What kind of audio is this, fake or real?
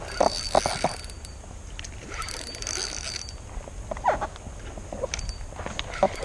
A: real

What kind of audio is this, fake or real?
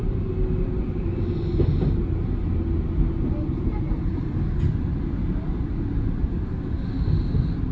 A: real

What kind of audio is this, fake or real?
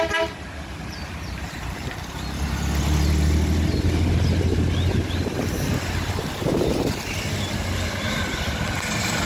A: real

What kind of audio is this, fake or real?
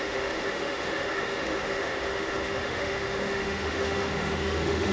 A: fake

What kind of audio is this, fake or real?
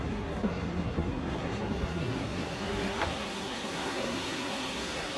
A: fake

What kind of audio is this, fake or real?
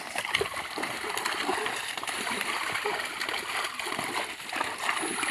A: real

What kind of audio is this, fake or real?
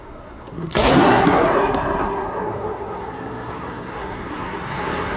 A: fake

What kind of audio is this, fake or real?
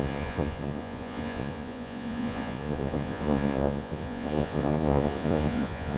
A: fake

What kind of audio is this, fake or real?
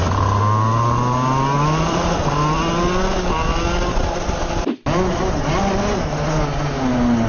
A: real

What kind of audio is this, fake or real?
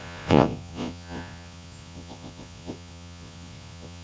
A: fake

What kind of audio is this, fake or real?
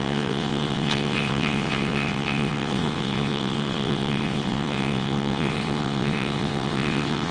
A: fake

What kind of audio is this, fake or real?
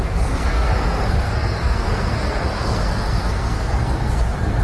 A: fake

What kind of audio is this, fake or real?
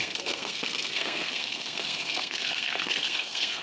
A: fake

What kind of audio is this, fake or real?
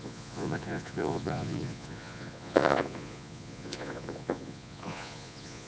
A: fake